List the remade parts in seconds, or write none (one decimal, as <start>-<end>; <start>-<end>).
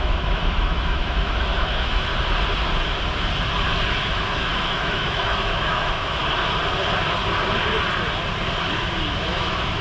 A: 0.0-2.1; 4.0-6.2; 9.2-9.8